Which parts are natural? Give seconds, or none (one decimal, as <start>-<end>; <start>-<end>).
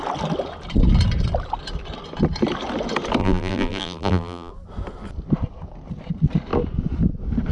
0.0-3.2; 4.5-7.5